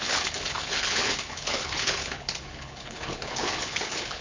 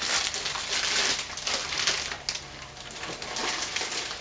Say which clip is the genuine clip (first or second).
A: second